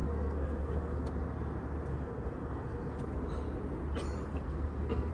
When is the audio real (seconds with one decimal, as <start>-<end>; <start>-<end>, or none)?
1.1-1.9; 3.0-4.3